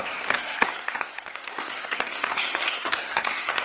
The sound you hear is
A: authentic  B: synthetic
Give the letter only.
B